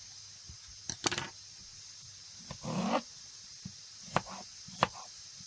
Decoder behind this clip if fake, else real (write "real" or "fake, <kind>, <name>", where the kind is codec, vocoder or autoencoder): real